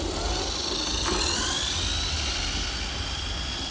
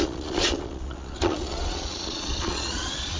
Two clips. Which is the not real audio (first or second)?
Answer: second